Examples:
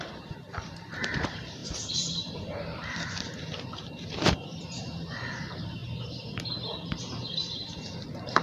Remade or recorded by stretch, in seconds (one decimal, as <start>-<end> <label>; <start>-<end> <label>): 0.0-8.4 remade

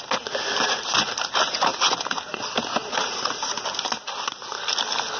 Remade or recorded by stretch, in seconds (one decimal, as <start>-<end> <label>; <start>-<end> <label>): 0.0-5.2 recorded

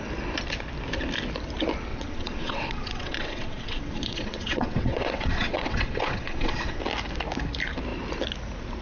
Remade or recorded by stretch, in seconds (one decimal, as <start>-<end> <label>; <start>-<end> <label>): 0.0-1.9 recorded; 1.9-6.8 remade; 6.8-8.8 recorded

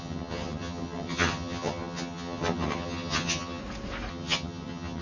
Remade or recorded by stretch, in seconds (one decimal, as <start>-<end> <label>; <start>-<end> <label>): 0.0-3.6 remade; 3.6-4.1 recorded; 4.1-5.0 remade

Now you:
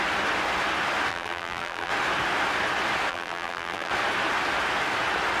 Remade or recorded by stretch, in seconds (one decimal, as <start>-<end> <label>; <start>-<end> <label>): 0.0-1.1 recorded; 1.1-1.9 remade; 1.9-3.1 recorded; 3.1-3.9 remade; 3.9-5.4 recorded